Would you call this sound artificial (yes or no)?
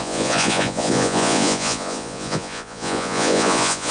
yes